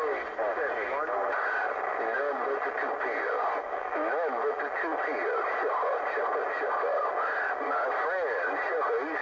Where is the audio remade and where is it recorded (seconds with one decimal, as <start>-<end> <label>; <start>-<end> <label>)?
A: 0.0-3.6 recorded; 3.6-4.6 remade; 4.6-9.2 recorded

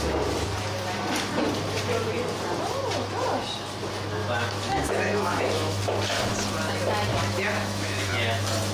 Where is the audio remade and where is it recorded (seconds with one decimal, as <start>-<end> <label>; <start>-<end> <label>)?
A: 0.0-4.2 recorded; 4.2-5.8 remade; 5.8-7.1 recorded; 7.1-8.1 remade; 8.1-8.7 recorded